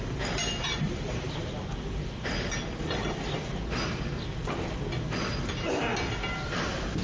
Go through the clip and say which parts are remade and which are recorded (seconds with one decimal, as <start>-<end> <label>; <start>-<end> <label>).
0.0-7.0 recorded